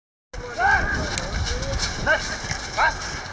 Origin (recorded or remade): recorded